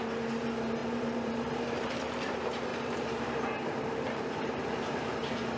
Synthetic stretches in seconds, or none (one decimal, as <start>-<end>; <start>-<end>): 0.8-1.9; 2.7-4.2